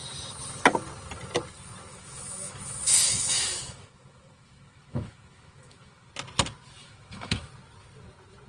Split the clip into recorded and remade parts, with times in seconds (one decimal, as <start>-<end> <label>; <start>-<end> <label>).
0.0-1.9 recorded; 1.9-6.1 remade; 6.1-6.8 recorded; 6.8-7.5 remade; 7.5-8.5 recorded

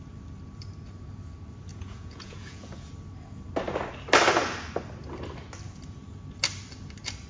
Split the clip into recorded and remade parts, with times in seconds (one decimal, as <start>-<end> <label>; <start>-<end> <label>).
0.0-1.7 recorded; 1.7-2.9 remade; 2.9-7.3 recorded

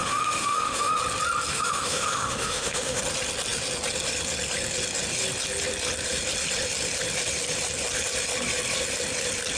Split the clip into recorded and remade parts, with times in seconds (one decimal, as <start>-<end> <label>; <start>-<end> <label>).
0.0-1.0 remade; 1.0-1.5 recorded; 1.5-3.0 remade; 3.0-9.6 recorded